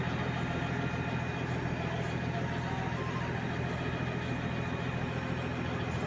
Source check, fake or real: real